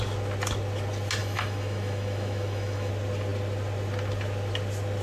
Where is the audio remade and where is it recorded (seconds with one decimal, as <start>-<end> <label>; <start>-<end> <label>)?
0.0-1.2 recorded; 1.2-2.9 remade; 2.9-5.0 recorded